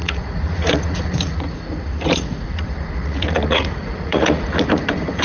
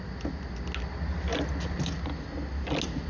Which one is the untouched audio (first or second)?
second